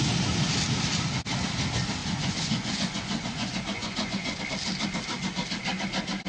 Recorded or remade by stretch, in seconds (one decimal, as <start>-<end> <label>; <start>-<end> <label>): 0.0-2.0 recorded; 2.0-4.4 remade; 4.4-6.3 recorded